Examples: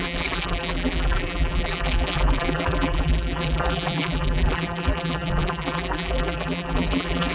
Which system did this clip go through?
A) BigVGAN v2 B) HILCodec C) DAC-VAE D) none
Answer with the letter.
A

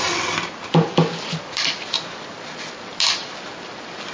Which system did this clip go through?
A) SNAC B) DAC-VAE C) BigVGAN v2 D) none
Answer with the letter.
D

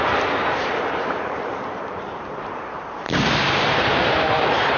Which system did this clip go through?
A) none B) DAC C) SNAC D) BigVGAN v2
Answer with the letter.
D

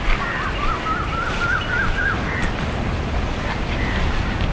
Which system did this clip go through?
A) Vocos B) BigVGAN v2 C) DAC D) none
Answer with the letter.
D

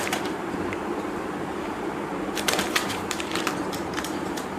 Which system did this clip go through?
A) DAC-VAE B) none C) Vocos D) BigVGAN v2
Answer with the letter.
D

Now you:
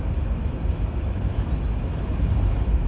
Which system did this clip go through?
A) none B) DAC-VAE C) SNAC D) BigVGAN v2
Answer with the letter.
D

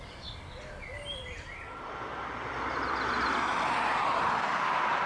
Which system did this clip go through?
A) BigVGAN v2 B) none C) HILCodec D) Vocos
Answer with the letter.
A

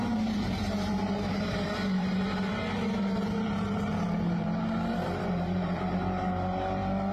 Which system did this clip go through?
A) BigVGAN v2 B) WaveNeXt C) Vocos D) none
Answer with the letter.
A